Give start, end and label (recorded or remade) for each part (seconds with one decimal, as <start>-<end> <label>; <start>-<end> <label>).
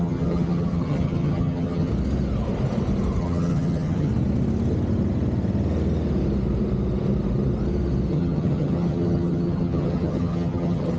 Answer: 0.0-1.9 remade; 1.9-3.2 recorded; 3.2-4.1 remade; 4.1-8.1 recorded; 8.1-11.0 remade